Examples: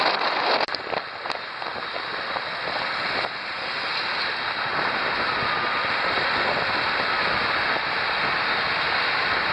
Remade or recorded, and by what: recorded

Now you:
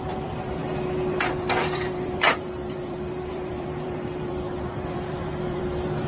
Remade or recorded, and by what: remade, vocoder, BigVGAN v2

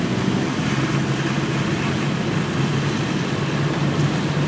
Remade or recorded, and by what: recorded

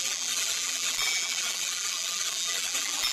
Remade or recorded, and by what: remade, vocoder, BigVGAN v2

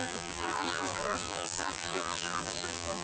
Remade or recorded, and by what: remade, vocoder, BigVGAN v2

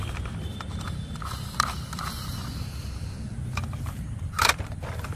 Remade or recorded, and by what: remade, vocoder, BigVGAN v2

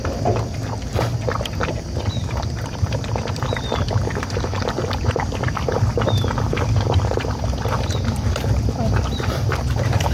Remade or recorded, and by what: remade, vocoder, BigVGAN v2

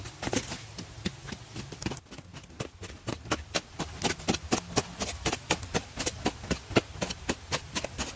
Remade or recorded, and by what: recorded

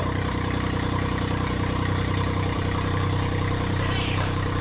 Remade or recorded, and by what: remade, vocoder, BigVGAN v2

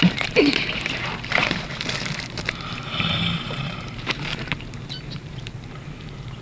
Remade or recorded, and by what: remade, vocoder, BigVGAN v2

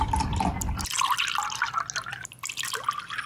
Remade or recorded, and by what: recorded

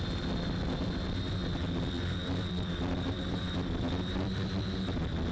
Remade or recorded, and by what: remade, vocoder, BigVGAN v2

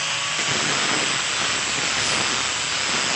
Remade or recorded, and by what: recorded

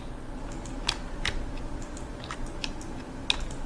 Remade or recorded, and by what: recorded